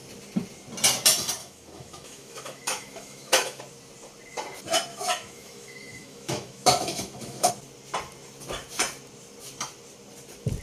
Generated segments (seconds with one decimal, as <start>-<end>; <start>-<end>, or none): 1.4-3.6; 4.9-7.5